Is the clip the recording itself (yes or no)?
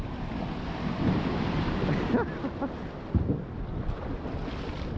yes